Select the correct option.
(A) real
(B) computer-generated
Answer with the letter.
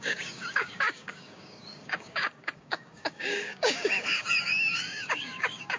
B